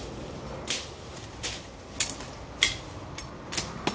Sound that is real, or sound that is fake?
real